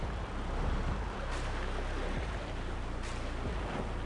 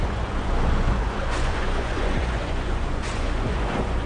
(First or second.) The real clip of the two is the first